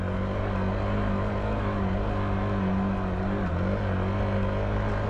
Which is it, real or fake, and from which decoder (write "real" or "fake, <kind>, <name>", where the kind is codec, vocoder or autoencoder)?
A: real